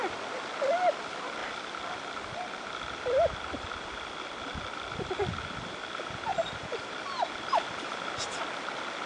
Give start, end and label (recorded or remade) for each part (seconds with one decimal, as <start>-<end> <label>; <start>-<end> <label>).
0.0-9.1 recorded

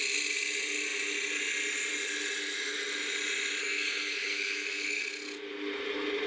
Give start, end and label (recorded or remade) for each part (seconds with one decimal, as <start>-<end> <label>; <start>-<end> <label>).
0.0-3.6 recorded; 3.6-5.0 remade; 5.0-6.3 recorded

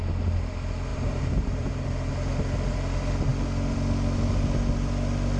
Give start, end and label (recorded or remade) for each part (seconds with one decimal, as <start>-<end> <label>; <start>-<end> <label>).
0.0-0.9 recorded; 0.9-2.1 remade; 2.1-5.4 recorded

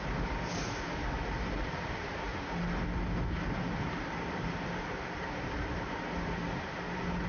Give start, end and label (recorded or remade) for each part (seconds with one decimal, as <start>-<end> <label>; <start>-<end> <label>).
0.0-2.3 remade; 2.3-3.8 recorded; 3.8-7.3 remade

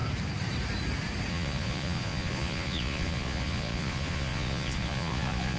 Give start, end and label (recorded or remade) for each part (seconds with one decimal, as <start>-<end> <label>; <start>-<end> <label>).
0.0-1.3 recorded; 1.3-5.6 remade

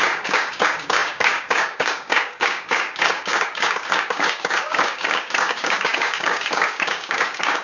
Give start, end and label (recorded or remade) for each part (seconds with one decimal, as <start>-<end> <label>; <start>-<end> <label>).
0.0-7.6 remade

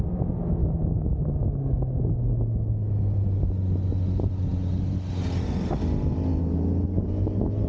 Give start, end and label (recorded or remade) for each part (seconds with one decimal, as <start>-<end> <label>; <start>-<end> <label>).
0.0-0.6 recorded; 0.6-1.1 remade; 1.1-7.7 recorded

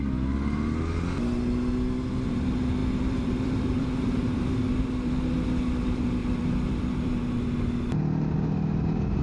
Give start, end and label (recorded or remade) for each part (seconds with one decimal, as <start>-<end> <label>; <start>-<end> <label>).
0.0-2.8 recorded; 2.8-5.1 remade; 5.1-6.2 recorded; 6.2-7.2 remade; 7.2-9.2 recorded